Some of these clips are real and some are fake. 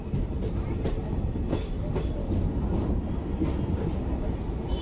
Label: real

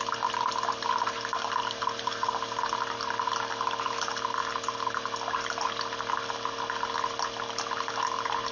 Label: real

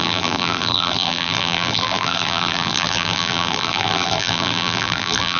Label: fake